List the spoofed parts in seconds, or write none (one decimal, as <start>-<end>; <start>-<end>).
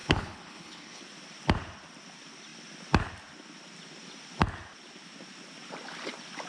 0.0-1.0